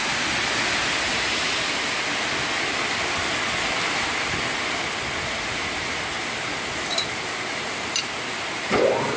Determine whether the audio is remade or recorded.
recorded